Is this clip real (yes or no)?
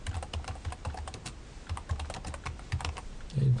no